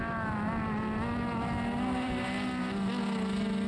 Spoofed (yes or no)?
no